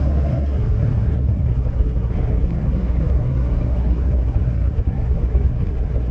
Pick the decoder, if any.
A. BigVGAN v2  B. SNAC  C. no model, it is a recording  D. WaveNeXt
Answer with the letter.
B